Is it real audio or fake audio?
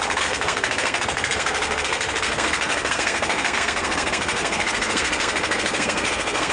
fake